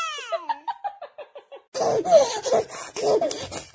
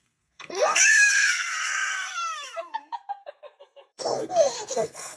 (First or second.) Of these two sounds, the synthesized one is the second